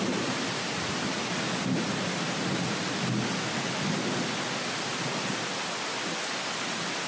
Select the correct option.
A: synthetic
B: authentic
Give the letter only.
B